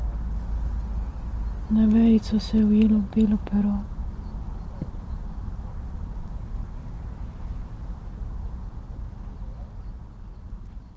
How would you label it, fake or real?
real